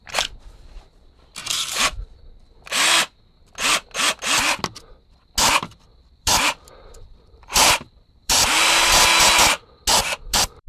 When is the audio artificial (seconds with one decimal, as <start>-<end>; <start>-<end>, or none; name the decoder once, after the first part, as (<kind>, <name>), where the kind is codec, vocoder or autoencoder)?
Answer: 1.4-2.2 (vocoder, BigVGAN v2); 5.9-9.1; 10.0-10.7